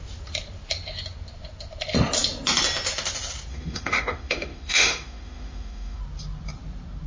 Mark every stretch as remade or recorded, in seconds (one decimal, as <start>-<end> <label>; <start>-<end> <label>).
0.0-3.5 recorded; 3.5-6.0 remade; 6.0-7.1 recorded